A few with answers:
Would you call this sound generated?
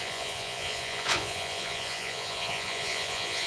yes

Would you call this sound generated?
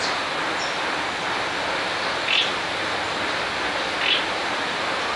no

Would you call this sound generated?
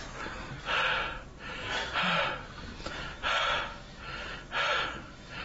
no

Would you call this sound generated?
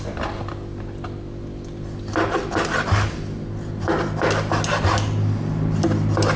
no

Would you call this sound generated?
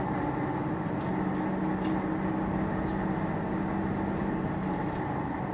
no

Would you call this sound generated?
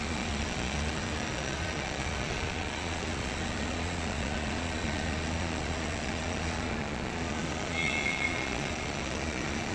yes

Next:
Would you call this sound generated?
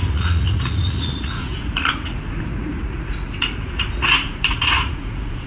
yes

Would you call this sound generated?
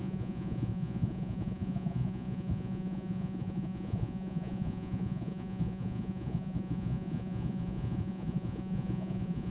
yes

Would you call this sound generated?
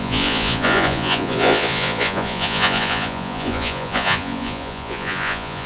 yes